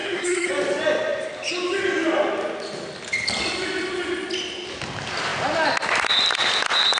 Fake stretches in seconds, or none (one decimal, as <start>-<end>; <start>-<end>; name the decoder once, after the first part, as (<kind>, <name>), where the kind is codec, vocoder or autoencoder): 0.0-0.5 (codec, SNAC)